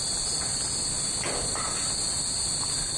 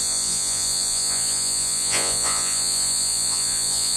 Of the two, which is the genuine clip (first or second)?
first